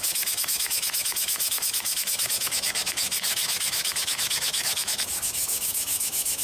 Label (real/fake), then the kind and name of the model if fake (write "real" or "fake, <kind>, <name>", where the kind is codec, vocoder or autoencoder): fake, autoencoder, DAC-VAE